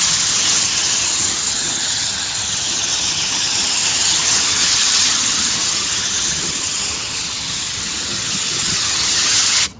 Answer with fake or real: fake